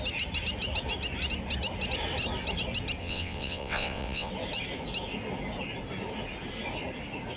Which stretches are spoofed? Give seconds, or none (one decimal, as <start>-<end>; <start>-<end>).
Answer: 3.0-4.3